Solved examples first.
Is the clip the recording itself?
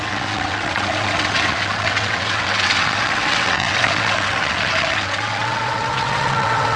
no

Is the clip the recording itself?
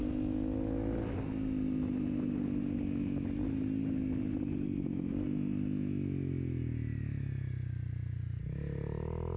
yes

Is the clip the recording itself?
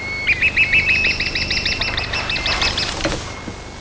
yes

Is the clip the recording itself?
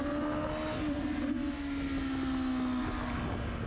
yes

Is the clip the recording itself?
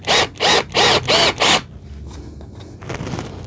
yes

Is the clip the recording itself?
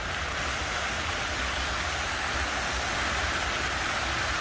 yes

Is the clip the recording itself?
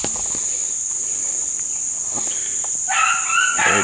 yes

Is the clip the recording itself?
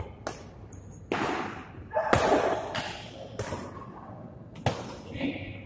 yes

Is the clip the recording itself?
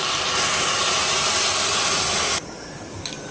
yes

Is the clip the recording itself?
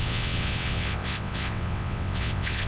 no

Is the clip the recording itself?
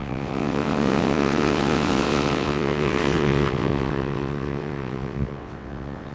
no